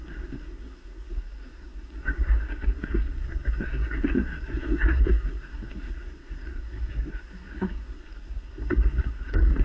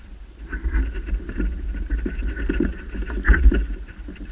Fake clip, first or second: first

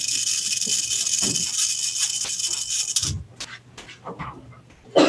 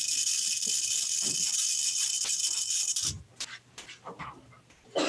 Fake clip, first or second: second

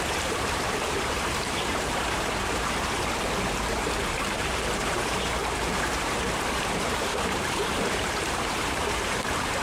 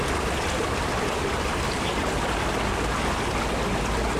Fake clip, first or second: first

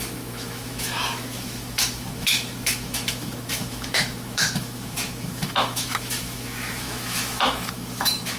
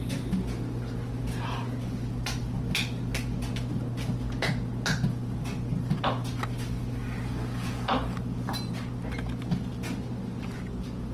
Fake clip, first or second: first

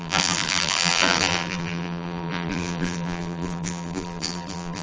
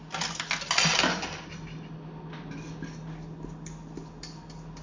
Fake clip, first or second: first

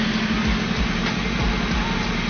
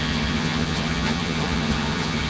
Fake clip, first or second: second